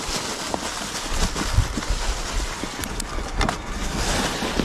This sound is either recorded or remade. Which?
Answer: recorded